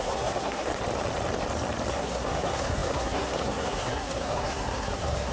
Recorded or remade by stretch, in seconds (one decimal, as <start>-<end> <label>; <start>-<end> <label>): 0.0-0.7 remade; 0.7-1.9 recorded; 1.9-5.3 remade